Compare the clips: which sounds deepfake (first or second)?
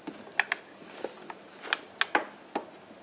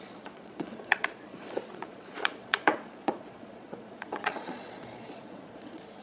second